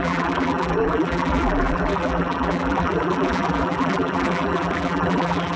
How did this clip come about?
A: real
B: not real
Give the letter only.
B